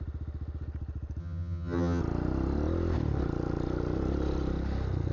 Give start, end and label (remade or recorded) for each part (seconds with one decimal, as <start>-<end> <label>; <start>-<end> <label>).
0.0-1.2 recorded; 1.2-2.0 remade; 2.0-5.1 recorded